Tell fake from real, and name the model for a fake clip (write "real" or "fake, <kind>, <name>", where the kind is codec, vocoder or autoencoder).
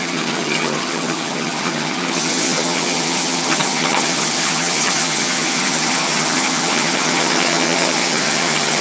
fake, vocoder, HiFi-GAN